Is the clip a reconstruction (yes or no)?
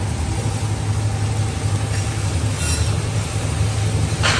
no